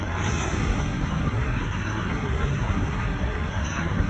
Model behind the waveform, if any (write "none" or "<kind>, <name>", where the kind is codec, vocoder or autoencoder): codec, SNAC